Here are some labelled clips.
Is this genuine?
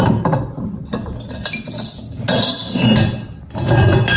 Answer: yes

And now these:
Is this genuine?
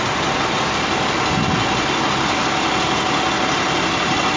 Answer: yes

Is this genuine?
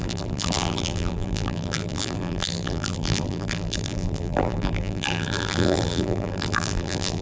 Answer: no